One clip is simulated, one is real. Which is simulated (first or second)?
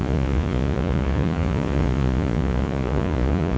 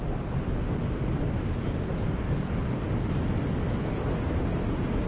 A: first